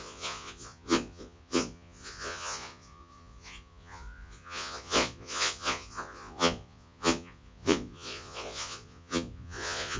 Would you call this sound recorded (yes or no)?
no